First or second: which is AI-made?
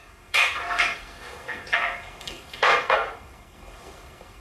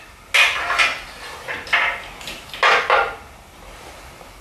first